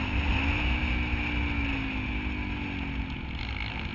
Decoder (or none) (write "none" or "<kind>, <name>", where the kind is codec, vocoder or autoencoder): none